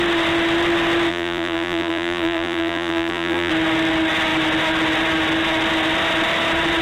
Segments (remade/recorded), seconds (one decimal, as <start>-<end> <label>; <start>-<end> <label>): 0.0-1.1 recorded; 1.1-3.5 remade; 3.5-6.8 recorded